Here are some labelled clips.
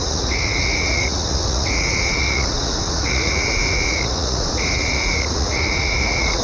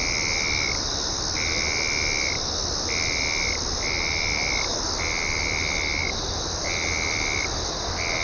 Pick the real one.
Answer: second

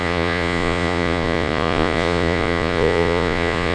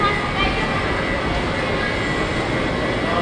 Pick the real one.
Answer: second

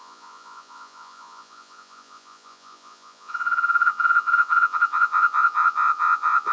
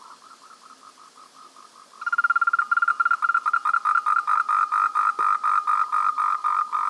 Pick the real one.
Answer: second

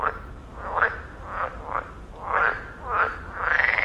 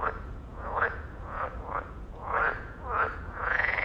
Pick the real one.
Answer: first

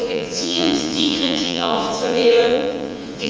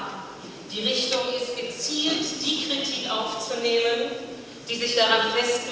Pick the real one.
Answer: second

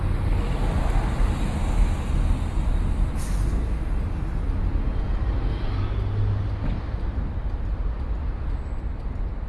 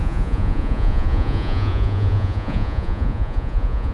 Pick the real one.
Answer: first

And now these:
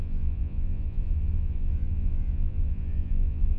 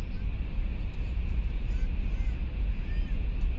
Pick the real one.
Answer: second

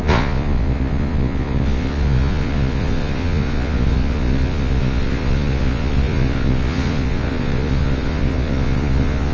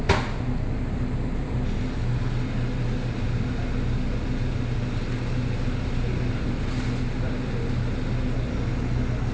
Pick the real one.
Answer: second